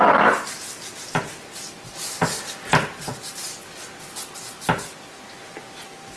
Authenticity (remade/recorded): recorded